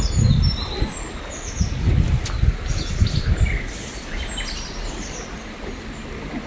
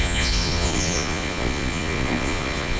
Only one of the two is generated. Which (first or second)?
second